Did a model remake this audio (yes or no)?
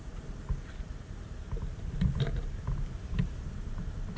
no